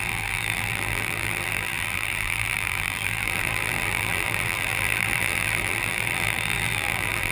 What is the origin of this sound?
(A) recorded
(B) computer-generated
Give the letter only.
B